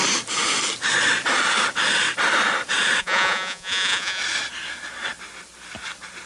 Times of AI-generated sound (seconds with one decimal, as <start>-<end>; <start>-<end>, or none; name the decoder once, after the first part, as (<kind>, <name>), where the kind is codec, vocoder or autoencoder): 3.0-4.2 (vocoder, Vocos)

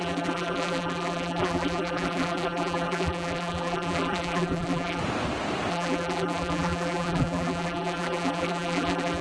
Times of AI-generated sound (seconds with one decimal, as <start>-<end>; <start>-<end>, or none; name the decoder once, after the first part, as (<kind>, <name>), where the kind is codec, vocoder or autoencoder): 0.0-5.0 (vocoder, BigVGAN v2); 5.7-9.2

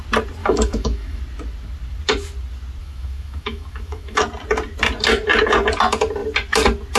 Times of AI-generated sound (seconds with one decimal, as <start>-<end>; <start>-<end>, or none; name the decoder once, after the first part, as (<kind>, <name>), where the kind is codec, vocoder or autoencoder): 0.4-1.2 (autoencoder, DAC-VAE); 2.8-4.2